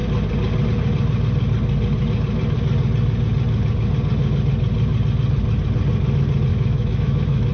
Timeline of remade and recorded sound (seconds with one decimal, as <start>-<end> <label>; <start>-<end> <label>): 0.0-6.5 recorded; 6.5-7.5 remade